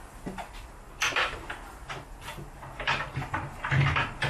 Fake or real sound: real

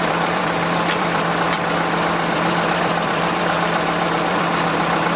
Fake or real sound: fake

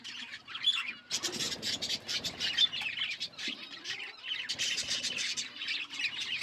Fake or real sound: real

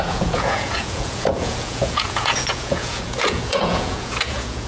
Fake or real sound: fake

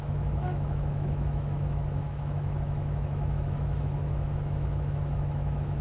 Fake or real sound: fake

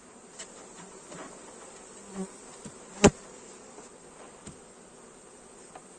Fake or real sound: real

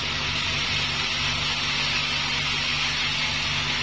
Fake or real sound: real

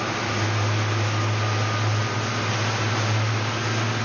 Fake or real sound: real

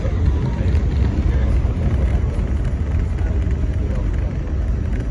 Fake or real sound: real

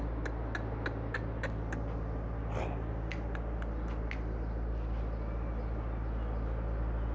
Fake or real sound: real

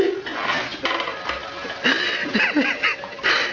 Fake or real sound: fake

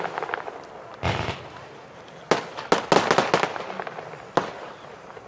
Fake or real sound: real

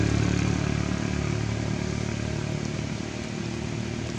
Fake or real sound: real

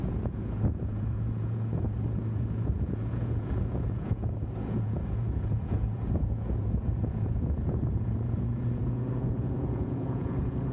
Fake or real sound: fake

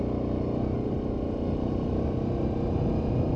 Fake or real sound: real